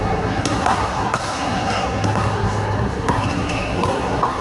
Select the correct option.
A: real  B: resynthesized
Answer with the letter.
B